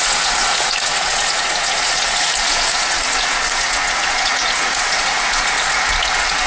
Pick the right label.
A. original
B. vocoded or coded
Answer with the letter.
B